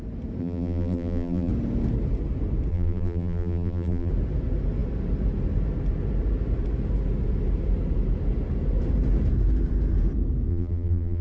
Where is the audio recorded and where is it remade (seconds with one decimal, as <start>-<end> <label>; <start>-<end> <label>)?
0.0-0.4 recorded; 0.4-1.5 remade; 1.5-2.7 recorded; 2.7-4.1 remade; 4.1-10.5 recorded; 10.5-11.2 remade